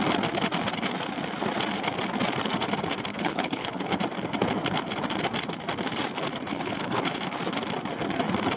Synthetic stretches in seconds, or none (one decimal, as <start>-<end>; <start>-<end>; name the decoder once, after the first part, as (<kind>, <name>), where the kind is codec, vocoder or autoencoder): 3.1-4.0 (codec, HILCodec); 6.5-7.0